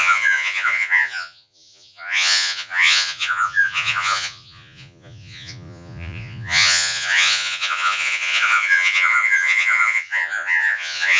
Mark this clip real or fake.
fake